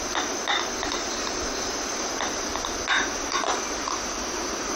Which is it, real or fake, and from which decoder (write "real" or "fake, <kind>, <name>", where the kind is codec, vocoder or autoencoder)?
real